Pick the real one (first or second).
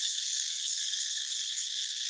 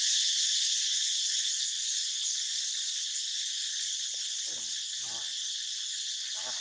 second